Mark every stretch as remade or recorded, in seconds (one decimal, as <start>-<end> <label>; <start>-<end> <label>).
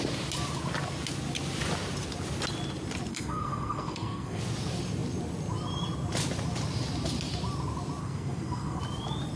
0.0-3.1 recorded; 3.1-4.4 remade; 4.4-8.0 recorded; 8.0-8.8 remade; 8.8-9.4 recorded